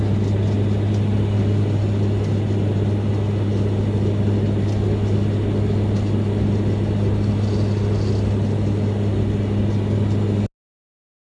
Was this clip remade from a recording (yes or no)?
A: no